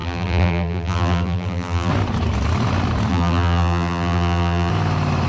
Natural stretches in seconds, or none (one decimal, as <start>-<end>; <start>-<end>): 1.9-3.1; 4.7-5.3